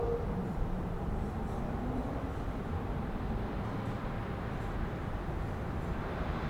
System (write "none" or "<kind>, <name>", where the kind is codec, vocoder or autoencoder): vocoder, BigVGAN v2